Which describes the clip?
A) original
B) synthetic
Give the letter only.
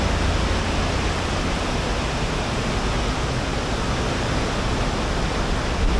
A